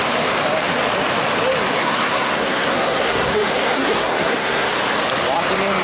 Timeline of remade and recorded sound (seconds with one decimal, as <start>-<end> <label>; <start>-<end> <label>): 0.0-1.8 recorded; 1.8-4.7 remade; 4.7-5.8 recorded